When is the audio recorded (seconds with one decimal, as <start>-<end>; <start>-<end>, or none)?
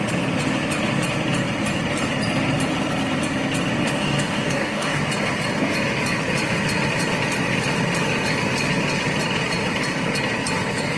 0.0-3.8; 5.0-11.0